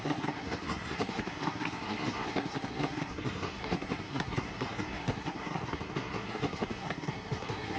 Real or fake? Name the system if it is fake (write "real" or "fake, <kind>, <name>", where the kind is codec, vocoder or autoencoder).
fake, codec, SNAC